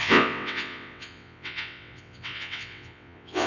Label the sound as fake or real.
fake